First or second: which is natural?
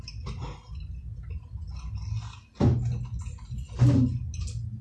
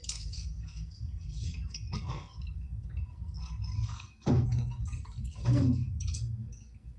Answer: first